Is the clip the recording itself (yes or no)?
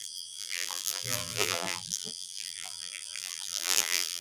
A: no